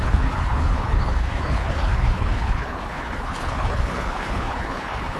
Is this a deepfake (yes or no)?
yes